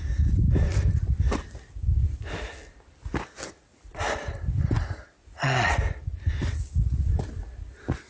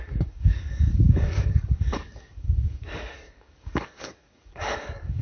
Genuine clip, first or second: first